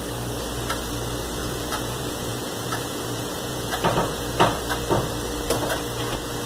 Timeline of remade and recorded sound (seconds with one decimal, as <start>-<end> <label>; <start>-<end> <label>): 0.0-1.4 recorded; 1.4-4.6 remade; 4.6-6.5 recorded